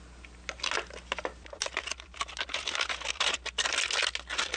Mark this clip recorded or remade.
recorded